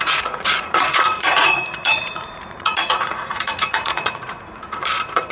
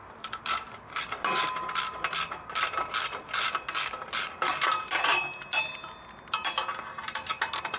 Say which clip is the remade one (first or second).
first